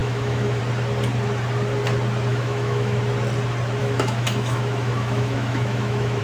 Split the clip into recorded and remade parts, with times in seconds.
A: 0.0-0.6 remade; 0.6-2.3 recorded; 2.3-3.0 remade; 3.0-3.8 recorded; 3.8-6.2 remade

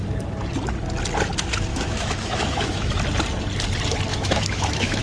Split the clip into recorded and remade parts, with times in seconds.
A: 0.0-1.7 recorded; 1.7-3.0 remade; 3.0-4.1 recorded; 4.1-5.0 remade

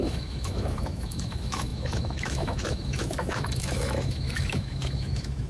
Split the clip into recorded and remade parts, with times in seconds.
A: 0.0-5.5 remade

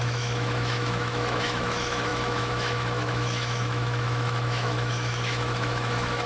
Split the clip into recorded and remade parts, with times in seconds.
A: 0.0-6.3 remade

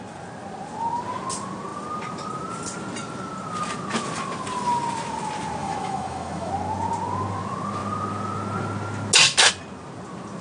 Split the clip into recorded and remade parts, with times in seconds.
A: 0.0-5.6 recorded; 5.6-6.5 remade; 6.5-10.4 recorded

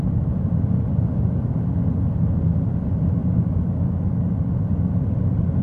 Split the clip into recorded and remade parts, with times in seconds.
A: 0.0-3.2 recorded; 3.2-4.1 remade; 4.1-5.6 recorded